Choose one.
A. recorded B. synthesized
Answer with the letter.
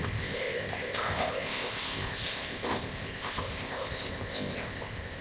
B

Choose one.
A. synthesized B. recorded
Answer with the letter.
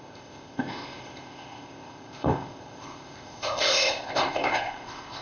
A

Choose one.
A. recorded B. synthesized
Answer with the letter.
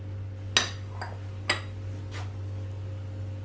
A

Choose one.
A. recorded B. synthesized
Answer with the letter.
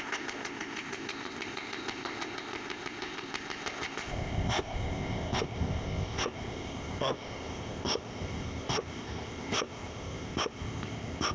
B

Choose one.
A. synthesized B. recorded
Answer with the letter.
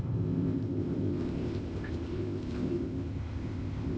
A